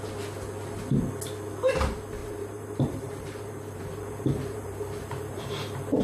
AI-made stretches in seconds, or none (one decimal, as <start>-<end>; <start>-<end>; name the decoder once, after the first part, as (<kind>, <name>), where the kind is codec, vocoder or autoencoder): 2.2-6.0 (vocoder, BigVGAN v2)